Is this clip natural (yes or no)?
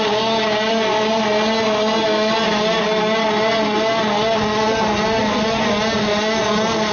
yes